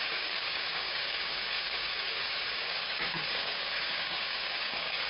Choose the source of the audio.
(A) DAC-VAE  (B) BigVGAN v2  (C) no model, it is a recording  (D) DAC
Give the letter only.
D